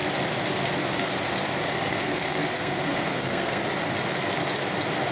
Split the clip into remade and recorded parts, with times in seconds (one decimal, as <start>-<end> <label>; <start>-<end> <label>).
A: 0.0-1.9 recorded; 1.9-3.6 remade; 3.6-5.1 recorded